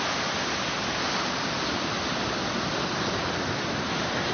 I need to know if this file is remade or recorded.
recorded